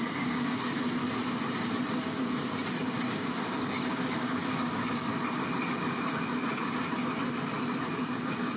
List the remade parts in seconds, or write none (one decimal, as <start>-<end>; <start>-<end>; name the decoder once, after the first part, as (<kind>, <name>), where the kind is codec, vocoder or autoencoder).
0.0-1.0 (codec, DAC); 3.0-5.1; 7.9-8.6